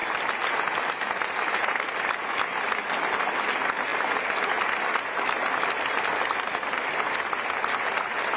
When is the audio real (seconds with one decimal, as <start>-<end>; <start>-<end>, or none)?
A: 0.0-8.4